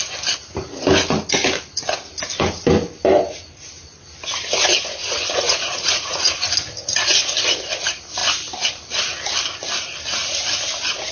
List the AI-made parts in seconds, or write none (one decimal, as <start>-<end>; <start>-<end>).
5.0-6.4